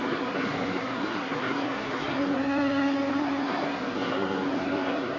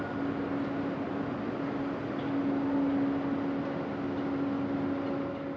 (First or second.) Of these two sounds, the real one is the second